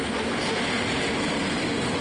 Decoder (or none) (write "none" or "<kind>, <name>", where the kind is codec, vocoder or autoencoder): none